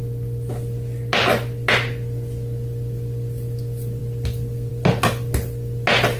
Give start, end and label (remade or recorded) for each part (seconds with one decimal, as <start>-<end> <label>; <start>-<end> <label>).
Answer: 0.0-6.2 recorded